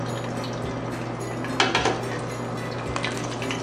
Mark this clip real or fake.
real